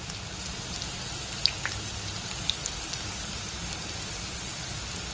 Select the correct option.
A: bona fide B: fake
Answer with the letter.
A